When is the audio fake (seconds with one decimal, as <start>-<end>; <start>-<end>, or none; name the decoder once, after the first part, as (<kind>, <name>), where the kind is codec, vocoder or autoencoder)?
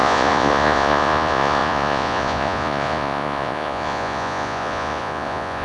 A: 0.0-5.6 (vocoder, Vocos)